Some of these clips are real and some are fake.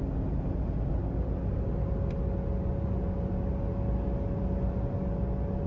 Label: real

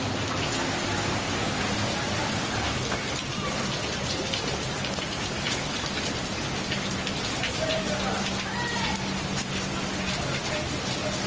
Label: real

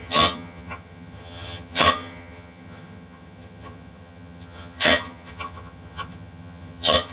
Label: fake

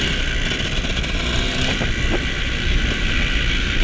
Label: real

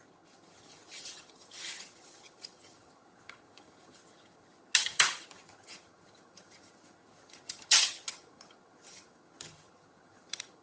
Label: fake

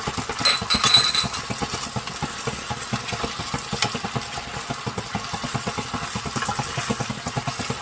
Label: real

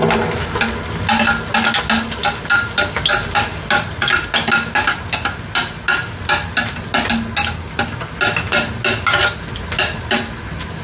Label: real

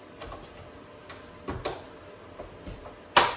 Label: real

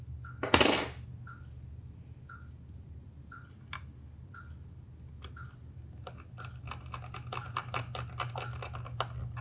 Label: real